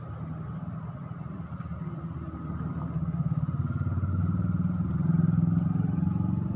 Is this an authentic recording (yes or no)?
yes